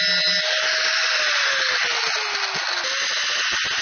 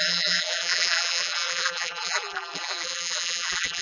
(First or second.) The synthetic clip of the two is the second